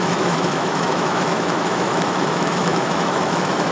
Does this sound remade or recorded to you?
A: remade